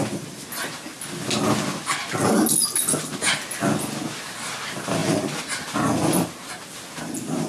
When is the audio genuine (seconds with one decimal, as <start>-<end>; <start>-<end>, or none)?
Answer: 0.0-7.5